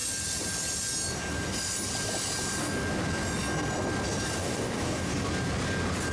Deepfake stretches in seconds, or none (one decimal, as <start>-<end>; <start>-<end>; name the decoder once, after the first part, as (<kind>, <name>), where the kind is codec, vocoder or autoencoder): 4.4-5.1 (codec, DAC)